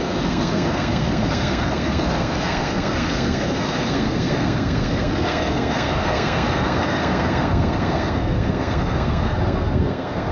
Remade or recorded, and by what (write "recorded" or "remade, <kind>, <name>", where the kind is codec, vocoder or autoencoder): remade, codec, SNAC